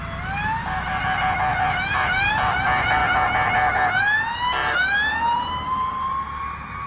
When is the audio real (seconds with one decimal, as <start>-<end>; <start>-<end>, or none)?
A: 0.0-1.5; 2.3-4.6; 6.1-6.9